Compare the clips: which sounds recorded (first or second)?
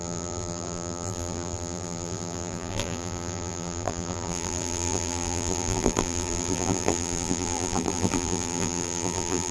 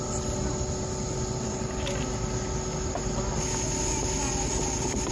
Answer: second